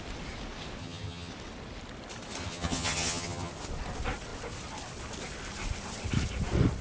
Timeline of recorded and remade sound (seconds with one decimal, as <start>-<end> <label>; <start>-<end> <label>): 0.0-0.8 recorded; 0.8-1.3 remade; 1.3-2.4 recorded; 2.4-3.5 remade; 3.5-6.8 recorded